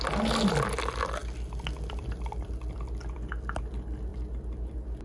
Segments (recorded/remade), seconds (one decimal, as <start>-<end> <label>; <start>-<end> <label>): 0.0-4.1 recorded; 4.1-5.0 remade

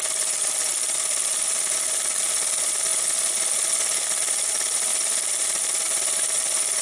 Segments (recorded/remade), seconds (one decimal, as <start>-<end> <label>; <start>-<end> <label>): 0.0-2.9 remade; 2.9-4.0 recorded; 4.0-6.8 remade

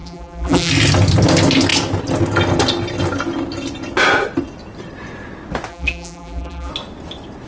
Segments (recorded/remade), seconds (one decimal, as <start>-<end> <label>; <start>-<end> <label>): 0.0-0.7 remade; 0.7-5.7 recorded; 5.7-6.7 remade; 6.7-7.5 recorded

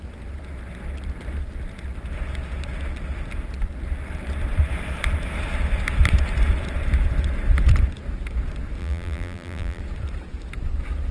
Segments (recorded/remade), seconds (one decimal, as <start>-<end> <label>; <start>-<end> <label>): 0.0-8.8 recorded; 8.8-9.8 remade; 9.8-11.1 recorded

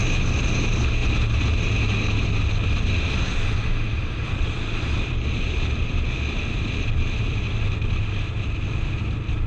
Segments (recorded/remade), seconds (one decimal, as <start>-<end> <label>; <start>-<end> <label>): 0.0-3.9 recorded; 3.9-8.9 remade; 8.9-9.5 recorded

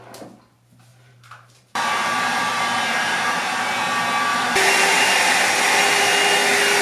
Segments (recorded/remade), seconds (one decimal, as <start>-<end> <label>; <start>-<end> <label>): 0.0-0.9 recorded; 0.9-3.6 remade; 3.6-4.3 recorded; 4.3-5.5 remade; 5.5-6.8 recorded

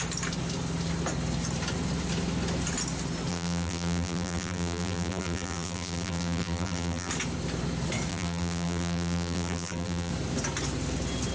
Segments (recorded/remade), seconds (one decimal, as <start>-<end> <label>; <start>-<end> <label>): 0.0-3.3 recorded; 3.3-7.1 remade; 7.1-8.1 recorded; 8.1-10.1 remade; 10.1-11.3 recorded

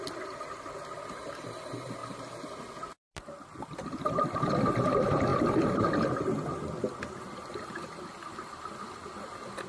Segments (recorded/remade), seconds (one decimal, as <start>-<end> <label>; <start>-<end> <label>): 0.0-2.0 recorded; 2.0-3.9 remade; 3.9-5.3 recorded; 5.3-6.4 remade; 6.4-9.7 recorded